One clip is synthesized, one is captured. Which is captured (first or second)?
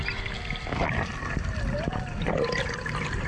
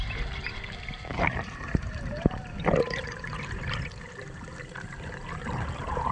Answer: first